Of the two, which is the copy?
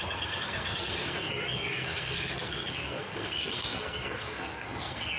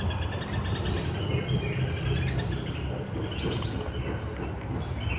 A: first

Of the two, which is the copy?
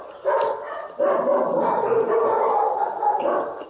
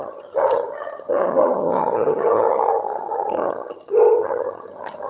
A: second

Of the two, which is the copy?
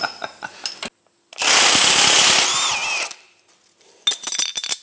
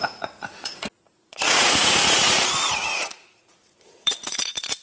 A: second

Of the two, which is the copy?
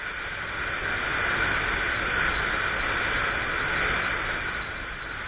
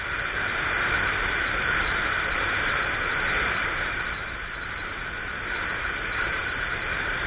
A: second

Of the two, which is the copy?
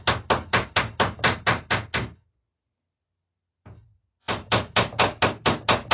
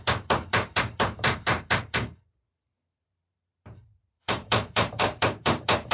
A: second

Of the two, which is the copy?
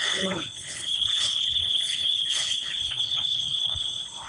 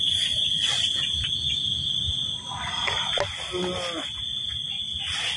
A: first